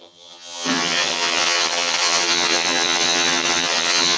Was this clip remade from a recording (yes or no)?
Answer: yes